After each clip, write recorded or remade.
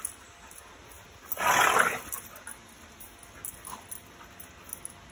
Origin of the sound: recorded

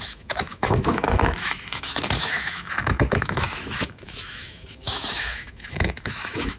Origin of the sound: remade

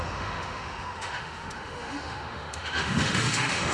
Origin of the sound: remade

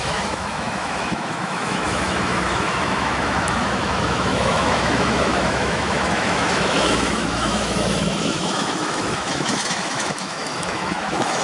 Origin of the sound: remade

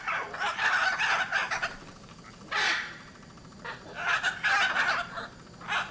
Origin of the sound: recorded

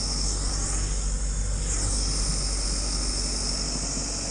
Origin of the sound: recorded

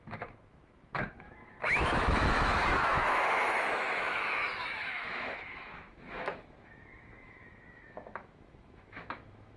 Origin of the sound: remade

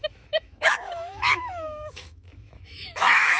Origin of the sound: remade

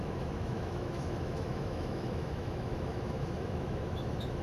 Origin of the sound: remade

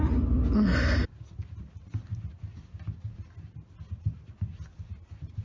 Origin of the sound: recorded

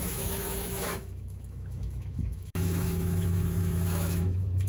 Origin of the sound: remade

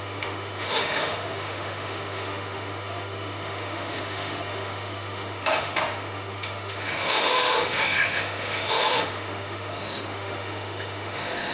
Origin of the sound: remade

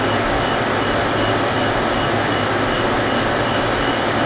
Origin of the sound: recorded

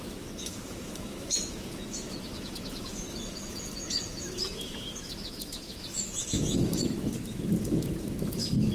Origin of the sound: remade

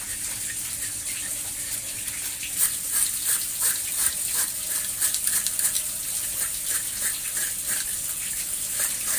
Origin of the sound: recorded